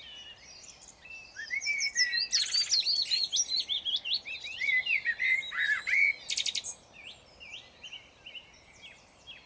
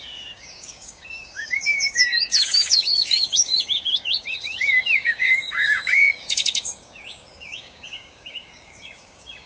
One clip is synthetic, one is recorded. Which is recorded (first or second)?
first